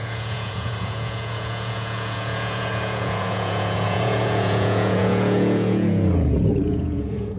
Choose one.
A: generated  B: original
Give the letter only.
A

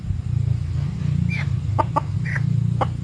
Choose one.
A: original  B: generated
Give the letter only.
A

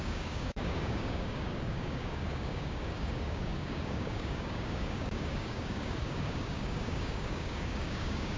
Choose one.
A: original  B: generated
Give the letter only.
B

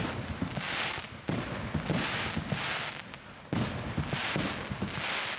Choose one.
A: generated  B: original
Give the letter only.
B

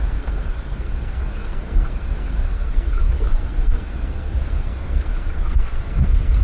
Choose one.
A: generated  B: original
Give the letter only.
A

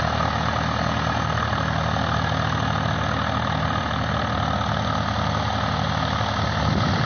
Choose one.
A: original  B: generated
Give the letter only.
A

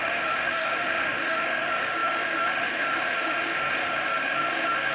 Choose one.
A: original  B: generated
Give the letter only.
B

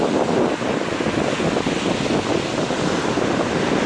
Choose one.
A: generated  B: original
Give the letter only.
B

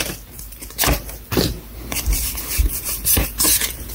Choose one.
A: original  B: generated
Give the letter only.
B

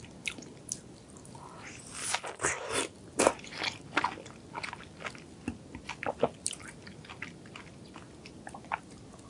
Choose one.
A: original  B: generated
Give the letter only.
A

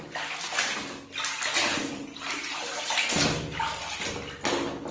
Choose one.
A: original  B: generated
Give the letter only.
A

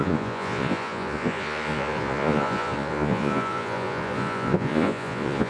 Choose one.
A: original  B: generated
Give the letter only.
B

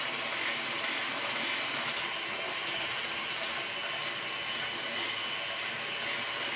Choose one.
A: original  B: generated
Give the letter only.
A